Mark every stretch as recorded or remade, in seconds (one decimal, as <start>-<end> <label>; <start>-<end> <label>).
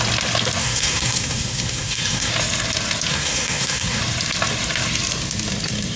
0.0-0.6 recorded; 0.6-2.3 remade; 2.3-3.1 recorded; 3.1-4.0 remade; 4.0-6.0 recorded